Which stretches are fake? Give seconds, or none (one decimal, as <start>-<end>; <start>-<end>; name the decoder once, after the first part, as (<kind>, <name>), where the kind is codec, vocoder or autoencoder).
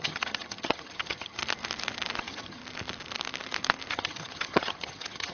0.0-1.4 (vocoder, HiFi-GAN); 2.2-2.6; 3.9-5.3